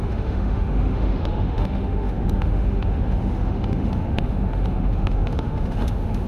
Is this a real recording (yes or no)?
no